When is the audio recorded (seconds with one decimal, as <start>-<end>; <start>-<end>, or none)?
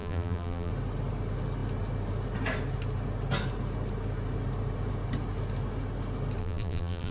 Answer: 0.7-6.4